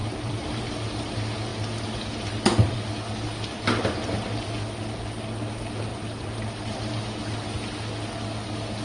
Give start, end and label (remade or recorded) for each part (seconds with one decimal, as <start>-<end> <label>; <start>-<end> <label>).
0.0-0.7 remade; 0.7-5.9 recorded; 5.9-7.0 remade; 7.0-8.8 recorded